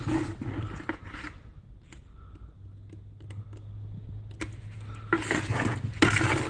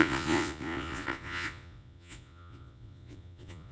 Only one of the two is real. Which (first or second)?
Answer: first